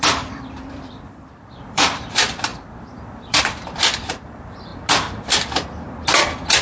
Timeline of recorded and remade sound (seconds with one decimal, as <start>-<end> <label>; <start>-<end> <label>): 0.0-4.7 remade; 4.7-6.1 recorded; 6.1-6.6 remade